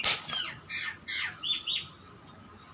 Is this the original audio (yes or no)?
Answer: yes